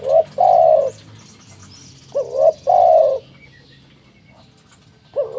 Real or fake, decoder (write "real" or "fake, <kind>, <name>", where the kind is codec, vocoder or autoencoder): real